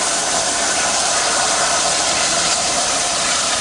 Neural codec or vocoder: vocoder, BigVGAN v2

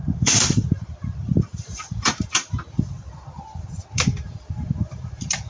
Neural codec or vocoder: vocoder, BigVGAN v2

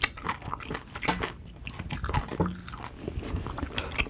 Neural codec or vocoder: none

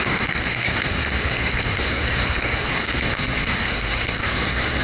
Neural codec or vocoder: codec, SNAC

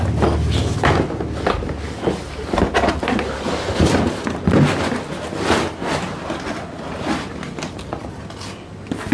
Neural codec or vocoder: none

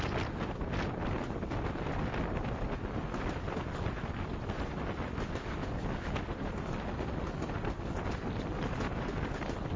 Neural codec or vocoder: none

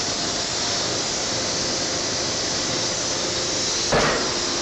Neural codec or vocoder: none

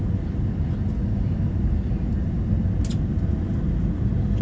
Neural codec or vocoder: none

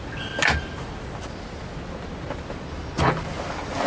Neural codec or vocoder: none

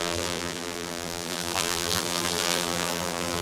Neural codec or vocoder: vocoder, BigVGAN v2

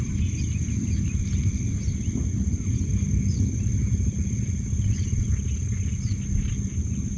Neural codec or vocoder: none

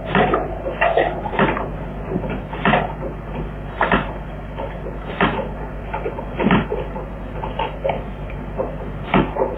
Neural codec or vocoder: none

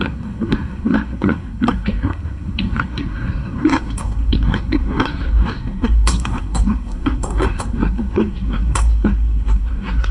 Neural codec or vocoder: codec, SNAC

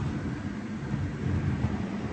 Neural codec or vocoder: none